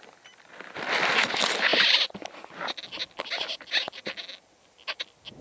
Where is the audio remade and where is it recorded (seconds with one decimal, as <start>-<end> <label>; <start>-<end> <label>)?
0.0-5.4 recorded